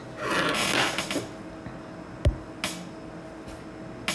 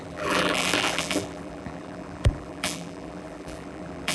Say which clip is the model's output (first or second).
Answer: second